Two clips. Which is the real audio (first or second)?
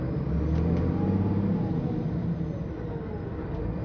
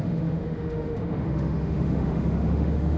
first